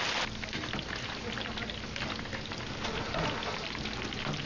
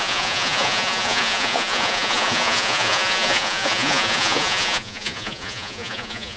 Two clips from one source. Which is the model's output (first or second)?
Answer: second